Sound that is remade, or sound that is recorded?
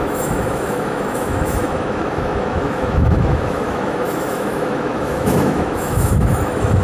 remade